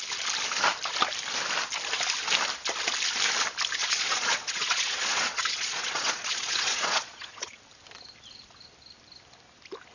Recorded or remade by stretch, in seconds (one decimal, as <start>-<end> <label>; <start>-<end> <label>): 0.0-3.8 recorded; 3.8-7.6 remade; 7.6-9.9 recorded

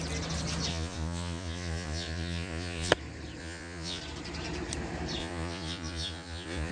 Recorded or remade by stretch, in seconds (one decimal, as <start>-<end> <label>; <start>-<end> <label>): 0.0-0.7 recorded; 0.7-2.9 remade; 2.9-3.4 recorded; 3.4-4.0 remade; 4.0-5.2 recorded; 5.2-6.7 remade